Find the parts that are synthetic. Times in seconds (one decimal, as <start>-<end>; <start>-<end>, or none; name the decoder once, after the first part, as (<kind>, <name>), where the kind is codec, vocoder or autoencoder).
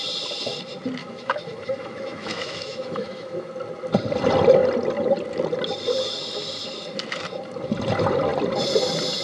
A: 1.0-3.5 (autoencoder, DAC-VAE)